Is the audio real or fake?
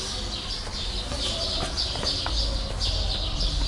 real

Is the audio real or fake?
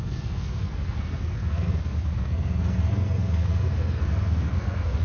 fake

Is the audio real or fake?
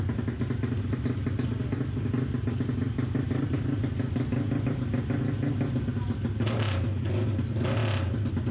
real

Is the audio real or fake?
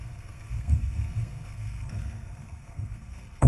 fake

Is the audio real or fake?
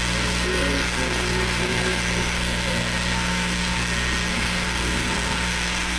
fake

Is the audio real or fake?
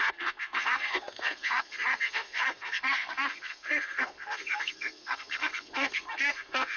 fake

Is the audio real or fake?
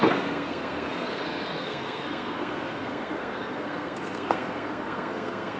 fake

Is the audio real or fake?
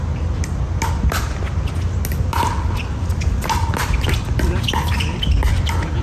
real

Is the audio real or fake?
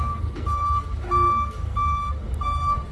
fake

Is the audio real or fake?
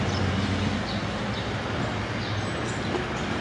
real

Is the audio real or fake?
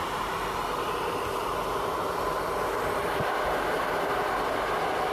real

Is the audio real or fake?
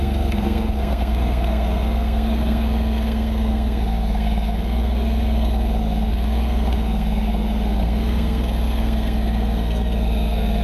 fake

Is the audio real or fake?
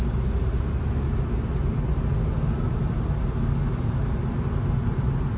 real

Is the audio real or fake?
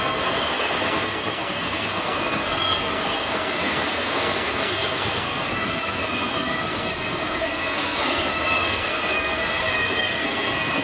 fake